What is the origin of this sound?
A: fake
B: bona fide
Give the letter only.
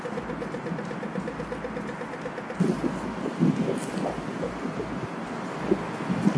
B